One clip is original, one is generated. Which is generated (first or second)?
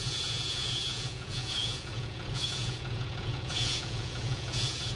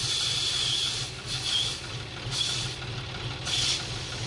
first